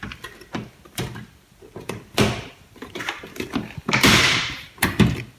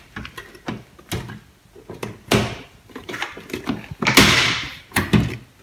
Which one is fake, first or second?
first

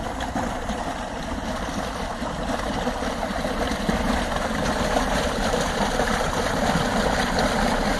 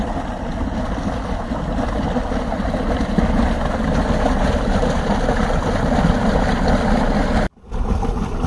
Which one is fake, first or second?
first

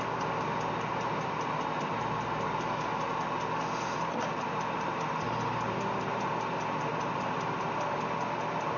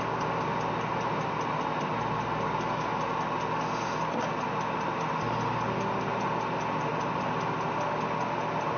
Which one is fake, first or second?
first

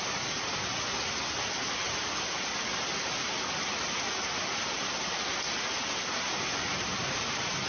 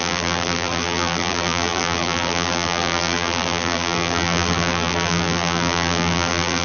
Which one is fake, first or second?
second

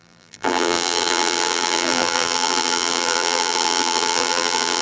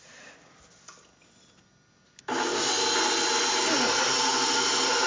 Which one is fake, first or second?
first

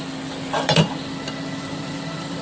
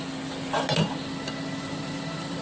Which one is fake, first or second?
first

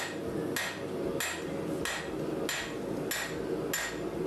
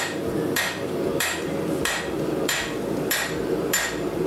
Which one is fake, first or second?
second